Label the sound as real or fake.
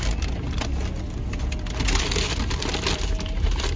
real